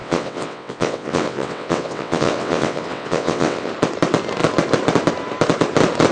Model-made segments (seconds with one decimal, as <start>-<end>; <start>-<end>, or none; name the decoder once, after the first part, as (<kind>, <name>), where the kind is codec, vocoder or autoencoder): 0.0-3.7 (vocoder, WaveNeXt)